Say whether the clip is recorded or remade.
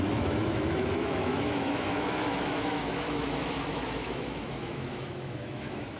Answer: remade